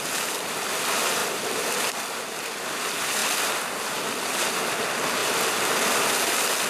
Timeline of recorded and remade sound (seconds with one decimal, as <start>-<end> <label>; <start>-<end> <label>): 0.0-6.7 recorded